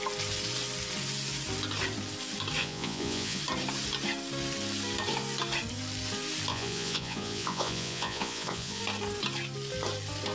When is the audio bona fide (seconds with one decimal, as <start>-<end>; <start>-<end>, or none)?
0.0-2.6; 3.4-6.5; 8.8-10.3